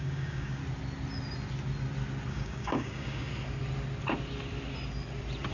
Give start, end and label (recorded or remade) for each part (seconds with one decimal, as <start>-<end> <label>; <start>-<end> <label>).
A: 0.0-0.6 remade; 0.6-2.3 recorded; 2.3-3.3 remade; 3.3-5.5 recorded